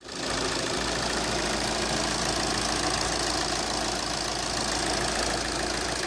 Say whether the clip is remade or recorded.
recorded